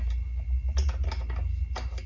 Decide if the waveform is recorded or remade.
recorded